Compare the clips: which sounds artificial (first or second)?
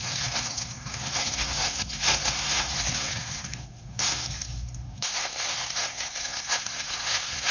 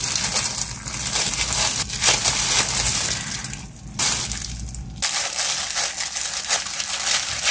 first